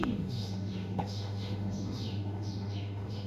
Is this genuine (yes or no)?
no